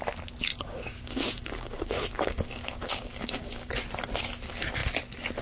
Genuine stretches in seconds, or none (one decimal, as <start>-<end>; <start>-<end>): 0.0-0.5; 3.7-5.4